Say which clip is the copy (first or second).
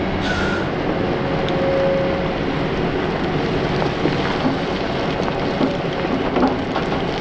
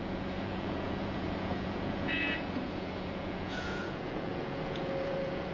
second